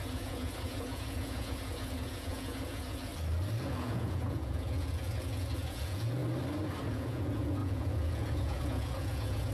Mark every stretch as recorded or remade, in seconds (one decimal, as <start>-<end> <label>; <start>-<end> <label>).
0.0-3.1 remade; 3.1-3.6 recorded; 3.6-6.2 remade; 6.2-6.9 recorded; 6.9-9.5 remade